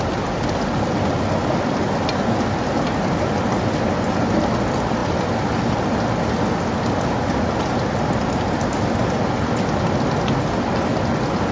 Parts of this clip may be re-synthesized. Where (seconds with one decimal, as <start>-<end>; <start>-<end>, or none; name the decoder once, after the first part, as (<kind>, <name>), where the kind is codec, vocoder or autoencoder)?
none